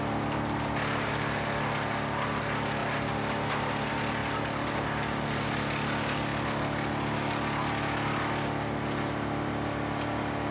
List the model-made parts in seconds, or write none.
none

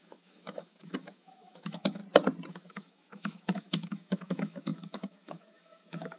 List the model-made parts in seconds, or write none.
0.0-2.0 (autoencoder, DAC-VAE); 2.5-6.2

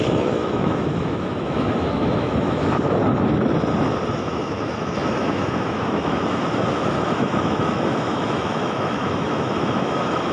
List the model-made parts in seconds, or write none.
0.0-3.0 (autoencoder, DAC-VAE); 4.1-10.3

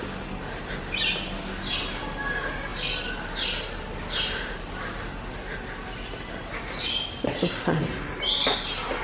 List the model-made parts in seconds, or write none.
none

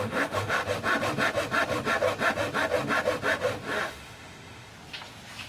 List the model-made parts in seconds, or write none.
0.0-0.6 (autoencoder, DAC-VAE); 3.9-4.7